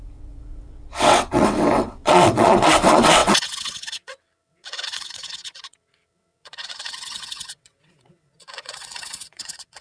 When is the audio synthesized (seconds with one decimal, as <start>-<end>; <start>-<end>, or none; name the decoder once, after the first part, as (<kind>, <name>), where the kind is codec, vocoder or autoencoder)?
0.0-9.8 (vocoder, WaveNeXt)